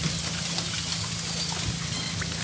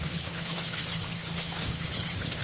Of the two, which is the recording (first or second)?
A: first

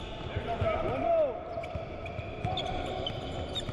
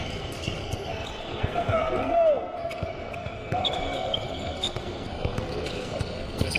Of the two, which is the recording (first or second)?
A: first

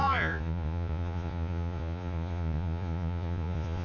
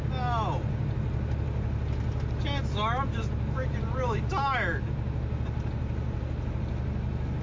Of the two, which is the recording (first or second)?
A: second